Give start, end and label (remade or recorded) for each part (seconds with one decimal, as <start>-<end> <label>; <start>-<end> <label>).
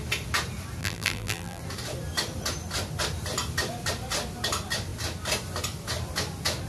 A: 0.0-0.8 recorded; 0.8-1.6 remade; 1.6-6.7 recorded